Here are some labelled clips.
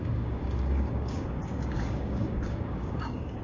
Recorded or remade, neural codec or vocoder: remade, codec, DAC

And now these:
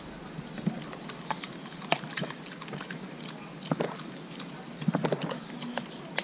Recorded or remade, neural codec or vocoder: recorded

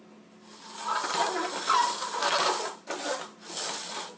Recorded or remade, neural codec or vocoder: recorded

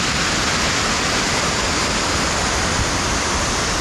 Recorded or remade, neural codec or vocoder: recorded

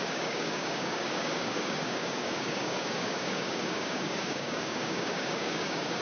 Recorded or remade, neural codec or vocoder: remade, codec, DAC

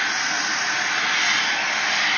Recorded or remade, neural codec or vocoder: recorded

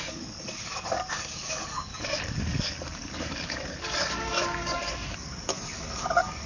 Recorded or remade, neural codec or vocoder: remade, codec, DAC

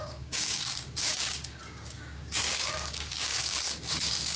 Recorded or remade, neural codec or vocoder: remade, codec, DAC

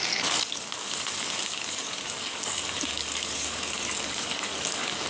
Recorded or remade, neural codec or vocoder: remade, codec, DAC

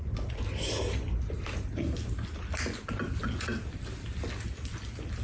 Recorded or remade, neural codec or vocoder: recorded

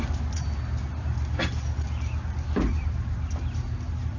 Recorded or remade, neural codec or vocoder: recorded